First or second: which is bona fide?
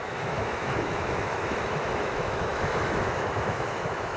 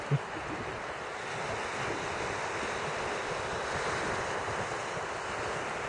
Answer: second